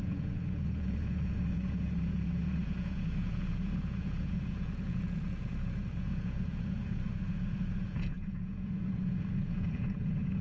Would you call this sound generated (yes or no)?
yes